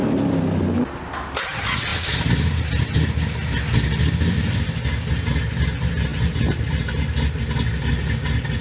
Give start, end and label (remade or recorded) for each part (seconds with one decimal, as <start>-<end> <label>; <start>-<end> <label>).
0.0-8.6 recorded

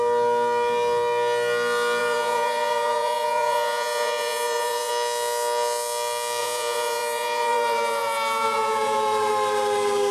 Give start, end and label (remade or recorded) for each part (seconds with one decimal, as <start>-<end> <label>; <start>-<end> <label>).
0.0-2.0 recorded; 2.0-4.9 remade; 4.9-6.4 recorded; 6.4-9.3 remade; 9.3-10.1 recorded